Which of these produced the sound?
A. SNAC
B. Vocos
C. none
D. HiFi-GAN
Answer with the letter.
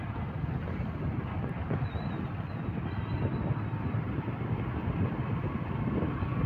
C